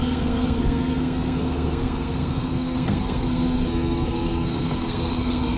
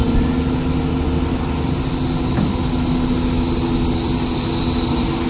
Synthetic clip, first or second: first